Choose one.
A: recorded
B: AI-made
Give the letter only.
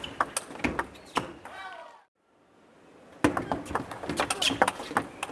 A